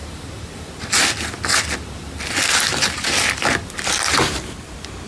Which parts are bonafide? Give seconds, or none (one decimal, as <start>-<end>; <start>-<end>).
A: 0.0-5.1